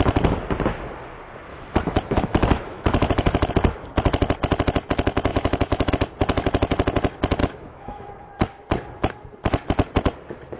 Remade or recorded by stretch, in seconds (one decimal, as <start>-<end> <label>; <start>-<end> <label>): 0.0-1.5 recorded; 1.5-3.5 remade; 3.5-5.3 recorded; 5.3-5.9 remade; 5.9-7.4 recorded; 7.4-8.1 remade; 8.1-10.6 recorded